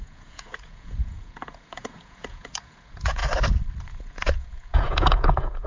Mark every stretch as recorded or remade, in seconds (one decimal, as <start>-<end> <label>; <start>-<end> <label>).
0.0-3.2 remade; 3.2-3.8 recorded; 3.8-5.7 remade